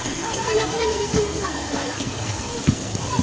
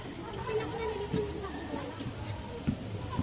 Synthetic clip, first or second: first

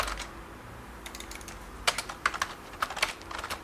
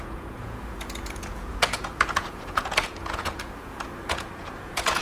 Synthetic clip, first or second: second